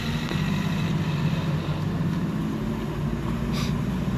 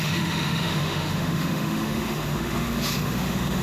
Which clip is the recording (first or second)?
first